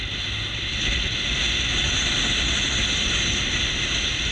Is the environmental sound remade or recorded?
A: recorded